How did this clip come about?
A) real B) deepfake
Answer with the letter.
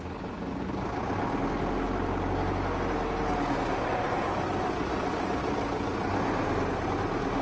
A